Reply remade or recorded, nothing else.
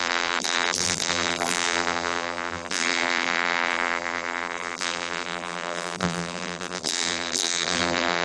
remade